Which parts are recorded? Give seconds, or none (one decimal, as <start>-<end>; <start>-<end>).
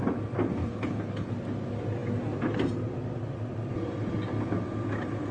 0.0-0.6; 1.3-5.3